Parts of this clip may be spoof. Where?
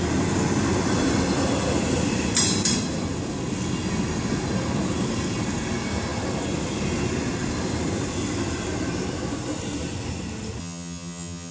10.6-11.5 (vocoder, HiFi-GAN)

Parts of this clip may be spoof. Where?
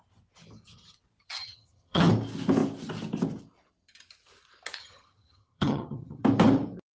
1.4-2.1 (vocoder, HiFi-GAN); 4.8-6.2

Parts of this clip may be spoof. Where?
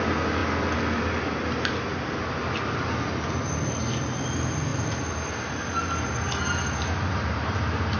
none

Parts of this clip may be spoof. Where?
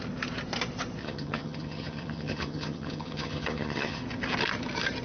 1.0-4.0 (vocoder, HiFi-GAN)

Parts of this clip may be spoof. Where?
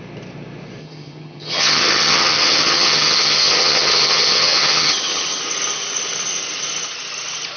0.8-5.4 (vocoder, HiFi-GAN)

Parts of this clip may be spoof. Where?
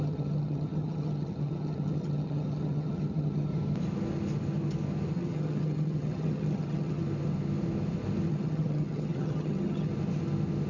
0.0-3.5 (vocoder, HiFi-GAN); 5.1-7.0; 8.3-9.9